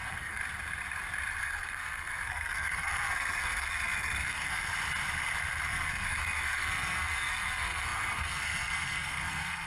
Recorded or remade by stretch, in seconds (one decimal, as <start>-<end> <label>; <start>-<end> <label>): 0.0-0.4 remade; 0.4-1.4 recorded; 1.4-4.7 remade; 4.7-5.6 recorded; 5.6-9.7 remade